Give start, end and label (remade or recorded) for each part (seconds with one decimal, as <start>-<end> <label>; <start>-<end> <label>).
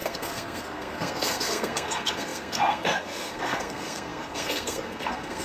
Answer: 0.0-5.4 remade